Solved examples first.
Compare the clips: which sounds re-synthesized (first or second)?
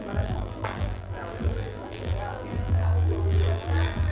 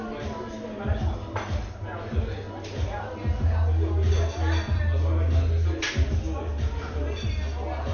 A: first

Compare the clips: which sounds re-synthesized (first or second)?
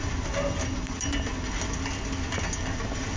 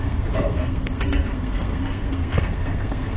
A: second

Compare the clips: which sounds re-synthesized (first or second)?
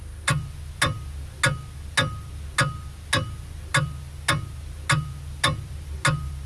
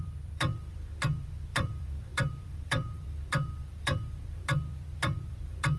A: second